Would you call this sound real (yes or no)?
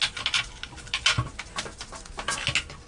yes